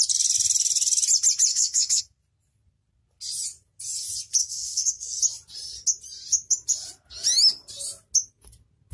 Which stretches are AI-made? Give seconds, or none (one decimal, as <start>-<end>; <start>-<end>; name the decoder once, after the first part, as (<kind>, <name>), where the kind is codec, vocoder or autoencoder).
1.5-2.0 (codec, SNAC); 4.4-5.2